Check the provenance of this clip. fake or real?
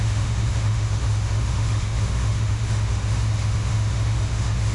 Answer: fake